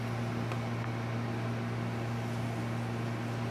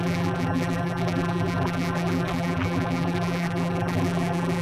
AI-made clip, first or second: second